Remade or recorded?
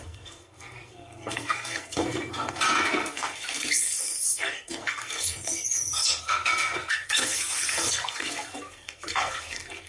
remade